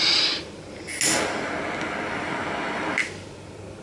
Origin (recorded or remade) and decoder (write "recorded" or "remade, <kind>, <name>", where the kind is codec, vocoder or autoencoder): recorded